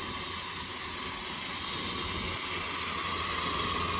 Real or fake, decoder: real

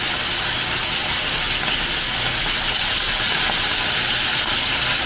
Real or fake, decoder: real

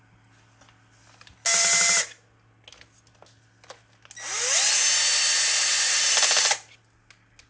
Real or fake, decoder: real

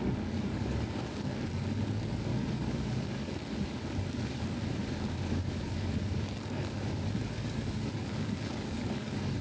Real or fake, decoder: fake, codec, DAC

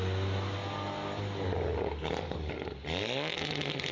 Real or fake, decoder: real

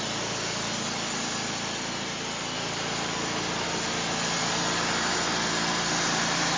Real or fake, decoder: real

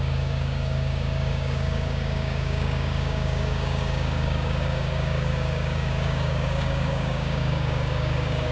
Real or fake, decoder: fake, codec, DAC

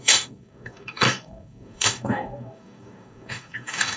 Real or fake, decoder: fake, codec, DAC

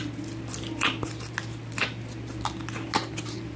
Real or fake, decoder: real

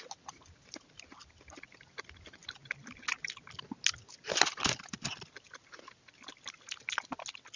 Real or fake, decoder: real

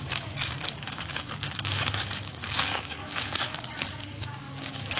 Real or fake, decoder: fake, codec, DAC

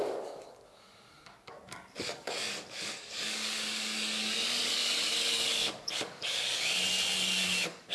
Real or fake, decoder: fake, codec, DAC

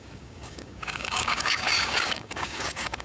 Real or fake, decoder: fake, codec, DAC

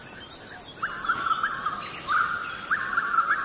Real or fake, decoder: real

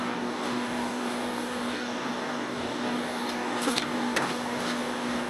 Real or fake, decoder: fake, codec, DAC